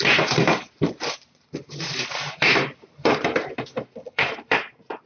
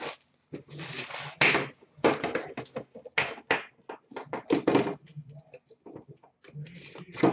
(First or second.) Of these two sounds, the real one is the second